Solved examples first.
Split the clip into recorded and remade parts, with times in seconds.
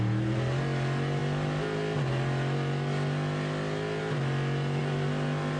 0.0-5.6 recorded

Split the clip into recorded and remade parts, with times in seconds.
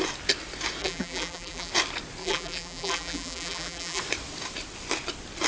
0.0-0.8 recorded; 0.8-1.7 remade; 1.7-2.2 recorded; 2.2-4.0 remade; 4.0-5.5 recorded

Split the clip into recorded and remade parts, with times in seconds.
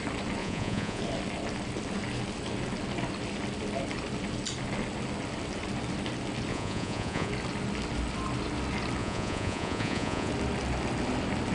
0.0-0.4 recorded; 0.4-1.0 remade; 1.0-6.5 recorded; 6.5-7.3 remade; 7.3-9.0 recorded; 9.0-10.3 remade; 10.3-11.5 recorded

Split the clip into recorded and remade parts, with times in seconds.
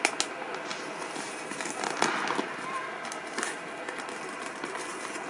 0.0-5.3 recorded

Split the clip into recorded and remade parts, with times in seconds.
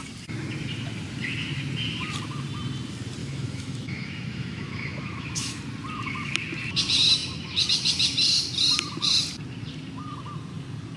0.0-3.2 recorded; 3.2-5.6 remade; 5.6-11.0 recorded